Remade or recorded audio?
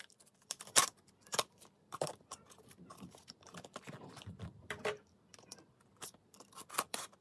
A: remade